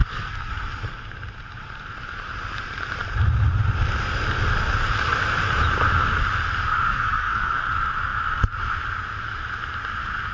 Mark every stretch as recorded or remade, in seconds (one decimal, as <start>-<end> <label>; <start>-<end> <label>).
0.0-0.5 remade; 0.5-6.9 recorded; 6.9-7.7 remade; 7.7-10.3 recorded